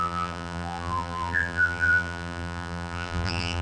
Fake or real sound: fake